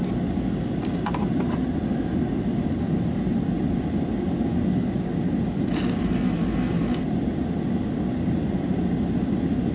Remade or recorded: recorded